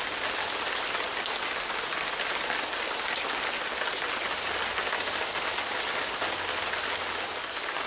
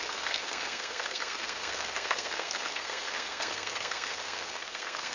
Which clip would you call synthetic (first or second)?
second